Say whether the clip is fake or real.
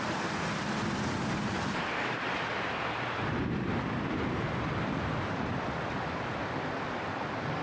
fake